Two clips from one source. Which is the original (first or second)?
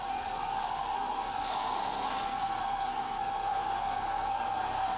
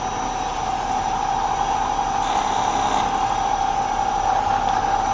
second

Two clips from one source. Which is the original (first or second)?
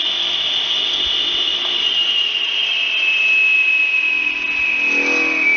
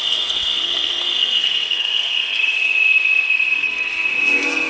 first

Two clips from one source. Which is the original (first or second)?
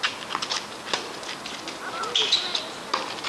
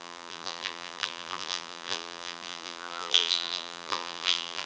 first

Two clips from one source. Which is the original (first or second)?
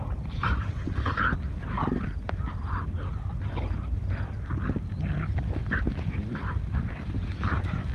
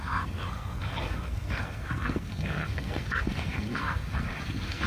first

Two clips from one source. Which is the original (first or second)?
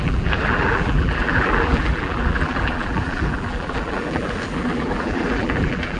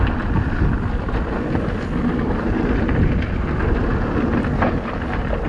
second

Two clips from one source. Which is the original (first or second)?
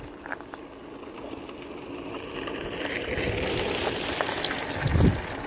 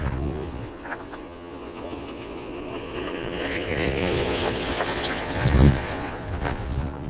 first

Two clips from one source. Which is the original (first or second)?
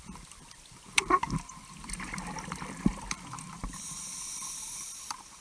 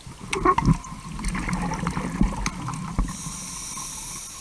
second